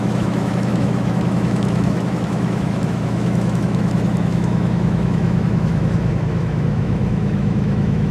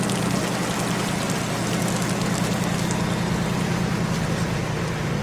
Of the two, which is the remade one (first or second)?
first